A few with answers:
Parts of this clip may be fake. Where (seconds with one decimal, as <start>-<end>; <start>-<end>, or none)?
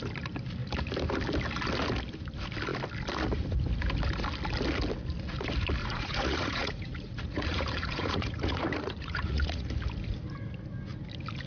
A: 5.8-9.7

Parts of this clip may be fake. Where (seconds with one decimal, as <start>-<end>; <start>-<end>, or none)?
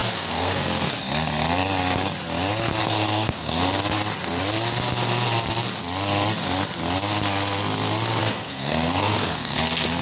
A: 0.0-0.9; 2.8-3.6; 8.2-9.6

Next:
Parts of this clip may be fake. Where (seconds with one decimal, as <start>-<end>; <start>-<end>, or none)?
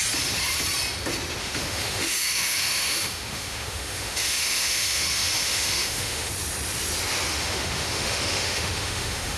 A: 1.4-6.3; 7.3-9.4